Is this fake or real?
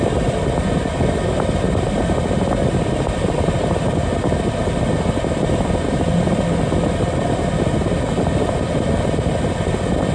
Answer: real